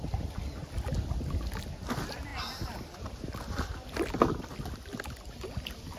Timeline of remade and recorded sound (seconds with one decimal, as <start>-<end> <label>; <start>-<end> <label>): 0.0-6.0 recorded